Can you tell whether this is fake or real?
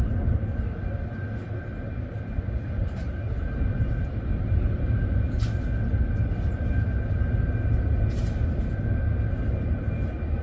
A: real